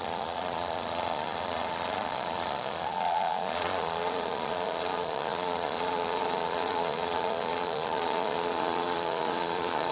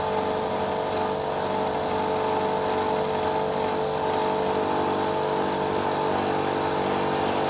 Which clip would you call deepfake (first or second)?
first